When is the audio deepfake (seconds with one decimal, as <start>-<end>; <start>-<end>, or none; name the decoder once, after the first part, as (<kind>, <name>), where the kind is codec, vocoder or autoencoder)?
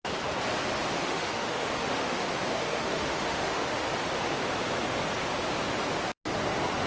1.0-2.3 (autoencoder, DAC-VAE); 2.7-3.9